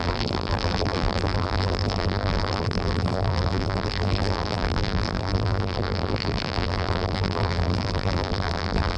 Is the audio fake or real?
fake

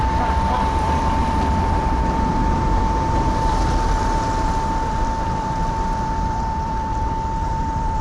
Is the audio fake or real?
fake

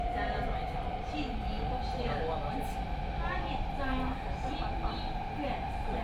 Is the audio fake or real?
real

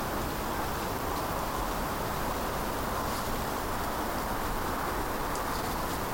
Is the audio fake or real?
real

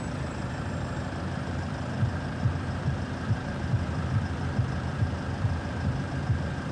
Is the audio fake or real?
fake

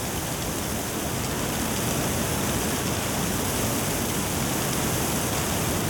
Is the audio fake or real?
real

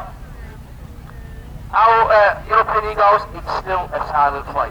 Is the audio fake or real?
real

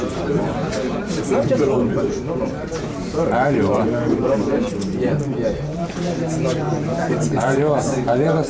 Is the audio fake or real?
fake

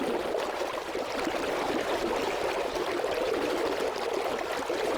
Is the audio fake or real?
real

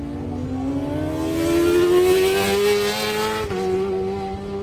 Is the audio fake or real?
real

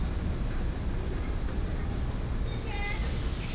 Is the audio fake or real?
fake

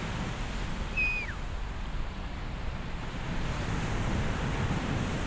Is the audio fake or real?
real